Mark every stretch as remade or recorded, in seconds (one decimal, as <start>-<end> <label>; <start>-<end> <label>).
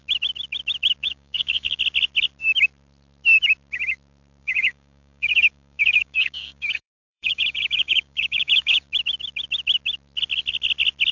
0.0-1.0 recorded; 1.0-1.8 remade; 1.8-4.4 recorded; 4.4-8.8 remade; 8.8-11.1 recorded